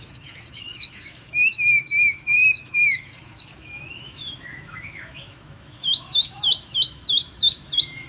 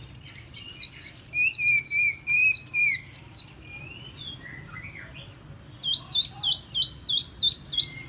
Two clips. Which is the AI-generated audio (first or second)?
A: first